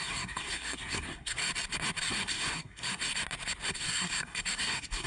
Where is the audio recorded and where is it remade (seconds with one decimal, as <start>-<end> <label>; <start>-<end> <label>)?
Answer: 0.0-1.4 remade; 1.4-2.1 recorded; 2.1-3.0 remade; 3.0-3.7 recorded; 3.7-5.1 remade